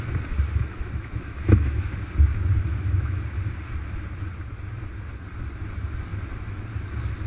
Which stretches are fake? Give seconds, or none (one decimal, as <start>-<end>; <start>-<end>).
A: 0.6-2.0; 2.7-3.2